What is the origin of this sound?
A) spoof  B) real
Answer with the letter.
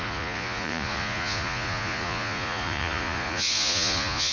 A